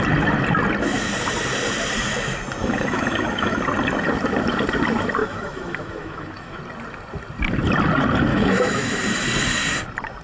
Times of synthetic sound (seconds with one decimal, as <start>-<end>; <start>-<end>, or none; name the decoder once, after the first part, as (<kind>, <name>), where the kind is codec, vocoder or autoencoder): 2.6-3.6 (autoencoder, DAC-VAE); 5.2-6.6; 8.3-9.0